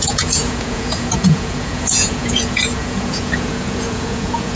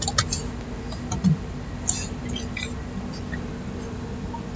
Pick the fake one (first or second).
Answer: first